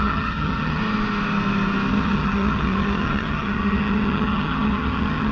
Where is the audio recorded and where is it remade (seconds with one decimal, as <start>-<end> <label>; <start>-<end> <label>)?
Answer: 0.0-0.8 remade; 0.8-1.9 recorded; 1.9-5.3 remade

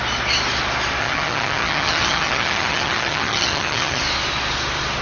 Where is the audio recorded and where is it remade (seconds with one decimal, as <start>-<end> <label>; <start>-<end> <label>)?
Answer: 0.0-1.0 recorded; 1.0-4.0 remade; 4.0-5.0 recorded

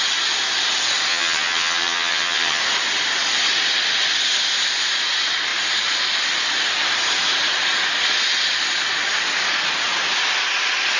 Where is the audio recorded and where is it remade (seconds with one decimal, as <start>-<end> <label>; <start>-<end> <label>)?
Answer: 0.0-1.1 recorded; 1.1-2.6 remade; 2.6-11.0 recorded

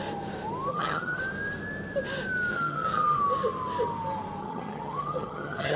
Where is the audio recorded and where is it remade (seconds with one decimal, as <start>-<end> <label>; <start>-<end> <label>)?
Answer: 0.0-0.7 recorded; 0.7-1.2 remade; 1.2-2.5 recorded; 2.5-3.2 remade; 3.2-4.4 recorded; 4.4-5.8 remade